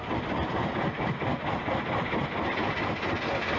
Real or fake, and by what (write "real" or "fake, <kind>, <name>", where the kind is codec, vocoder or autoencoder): fake, vocoder, BigVGAN v2